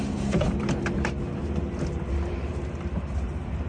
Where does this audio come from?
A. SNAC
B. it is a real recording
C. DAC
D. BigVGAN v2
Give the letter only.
D